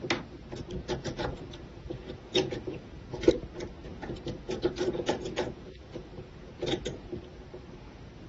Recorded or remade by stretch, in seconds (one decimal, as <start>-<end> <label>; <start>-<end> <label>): 0.0-0.8 recorded; 0.8-3.3 remade; 3.3-3.9 recorded; 3.9-7.1 remade; 7.1-8.3 recorded